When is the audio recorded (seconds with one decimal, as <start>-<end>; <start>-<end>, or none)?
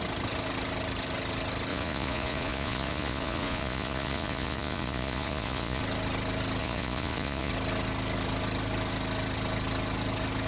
0.0-1.7; 5.8-6.6; 7.5-10.5